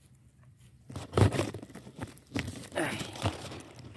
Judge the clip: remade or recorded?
recorded